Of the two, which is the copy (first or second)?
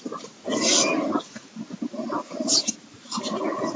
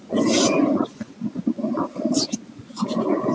second